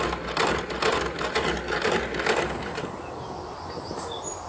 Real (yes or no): yes